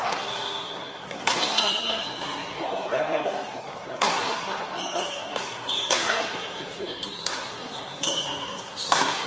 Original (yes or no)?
no